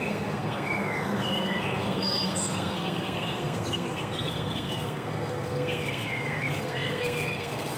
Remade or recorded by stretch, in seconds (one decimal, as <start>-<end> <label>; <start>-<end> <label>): 0.0-7.8 remade